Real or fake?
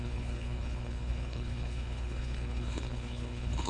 fake